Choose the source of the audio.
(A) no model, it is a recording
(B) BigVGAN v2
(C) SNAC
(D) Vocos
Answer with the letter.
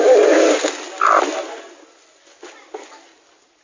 A